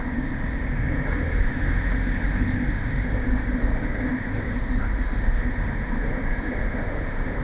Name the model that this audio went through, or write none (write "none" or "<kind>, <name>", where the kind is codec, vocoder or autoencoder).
autoencoder, DAC-VAE